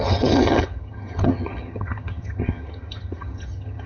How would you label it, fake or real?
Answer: fake